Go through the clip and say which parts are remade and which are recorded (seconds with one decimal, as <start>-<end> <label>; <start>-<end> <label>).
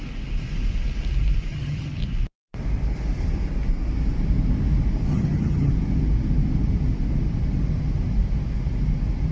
0.0-1.5 recorded; 1.5-2.0 remade; 2.0-5.1 recorded; 5.1-5.7 remade; 5.7-9.3 recorded